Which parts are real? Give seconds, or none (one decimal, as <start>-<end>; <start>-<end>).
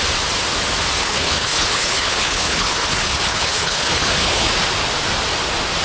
0.0-1.0; 4.5-5.8